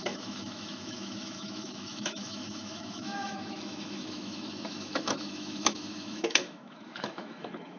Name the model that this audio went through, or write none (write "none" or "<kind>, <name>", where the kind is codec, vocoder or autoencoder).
autoencoder, DAC-VAE